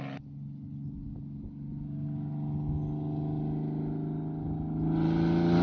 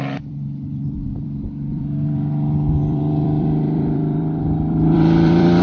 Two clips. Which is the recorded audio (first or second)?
first